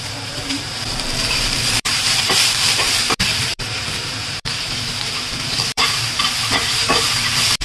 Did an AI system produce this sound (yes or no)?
yes